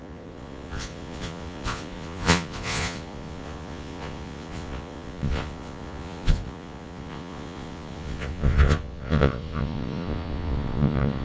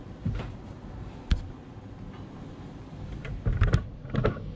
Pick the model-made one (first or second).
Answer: first